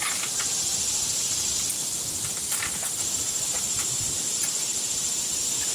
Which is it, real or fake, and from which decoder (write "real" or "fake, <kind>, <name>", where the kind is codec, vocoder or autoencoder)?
real